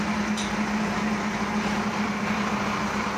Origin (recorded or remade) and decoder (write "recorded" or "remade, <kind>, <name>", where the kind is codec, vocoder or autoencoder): recorded